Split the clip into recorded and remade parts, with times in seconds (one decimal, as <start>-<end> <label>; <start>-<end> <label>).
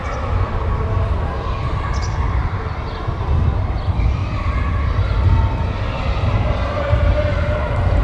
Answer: 0.0-2.3 recorded; 2.3-4.2 remade; 4.2-6.5 recorded; 6.5-8.0 remade